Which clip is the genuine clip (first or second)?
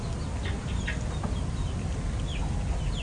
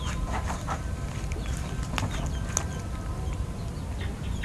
first